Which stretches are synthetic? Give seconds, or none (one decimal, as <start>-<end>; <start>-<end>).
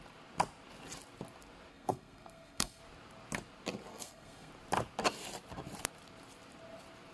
1.7-2.8; 3.9-4.5